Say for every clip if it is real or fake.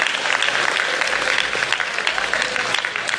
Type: real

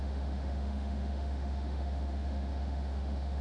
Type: fake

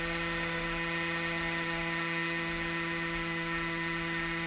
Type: fake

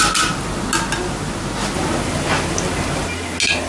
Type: real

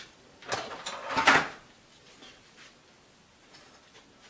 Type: real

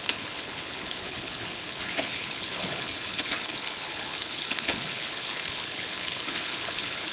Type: fake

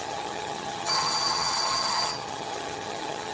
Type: fake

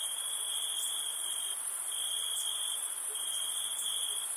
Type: real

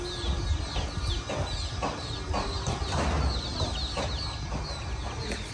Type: real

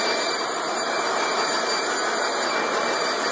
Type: fake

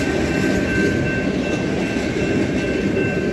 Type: real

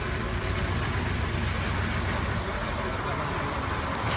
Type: real